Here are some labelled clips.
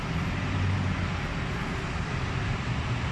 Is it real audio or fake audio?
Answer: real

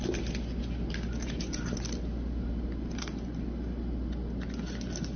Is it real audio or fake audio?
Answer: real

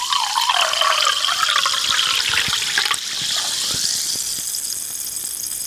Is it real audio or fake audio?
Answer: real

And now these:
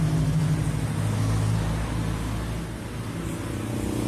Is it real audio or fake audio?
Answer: real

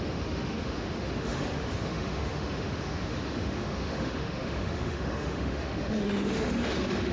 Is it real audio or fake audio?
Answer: fake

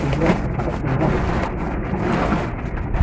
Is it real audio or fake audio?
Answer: real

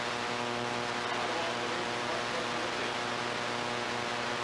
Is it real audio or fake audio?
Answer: real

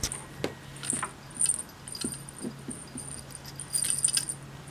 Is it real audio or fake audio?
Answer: real